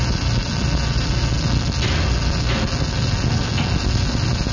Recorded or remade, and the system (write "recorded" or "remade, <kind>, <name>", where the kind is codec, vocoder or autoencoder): recorded